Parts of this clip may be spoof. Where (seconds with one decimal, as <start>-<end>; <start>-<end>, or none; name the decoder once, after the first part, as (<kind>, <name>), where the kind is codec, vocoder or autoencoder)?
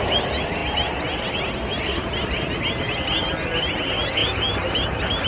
4.2-5.3 (vocoder, BigVGAN v2)